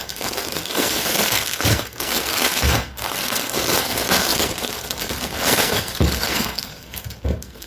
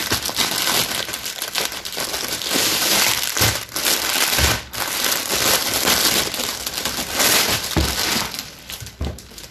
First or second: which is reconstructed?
first